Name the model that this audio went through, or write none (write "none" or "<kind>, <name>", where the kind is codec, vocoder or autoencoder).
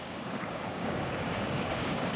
codec, DAC